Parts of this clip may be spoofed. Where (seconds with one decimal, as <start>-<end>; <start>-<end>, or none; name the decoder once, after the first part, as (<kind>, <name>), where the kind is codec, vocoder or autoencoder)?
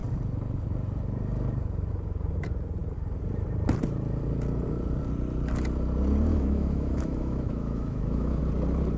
6.3-8.4 (autoencoder, DAC-VAE)